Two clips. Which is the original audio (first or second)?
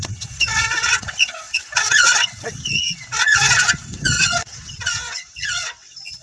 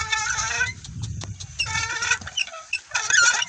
second